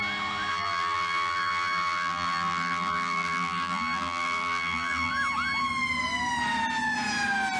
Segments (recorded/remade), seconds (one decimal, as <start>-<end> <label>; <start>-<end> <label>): 0.0-0.5 recorded; 0.5-5.1 remade; 5.1-7.6 recorded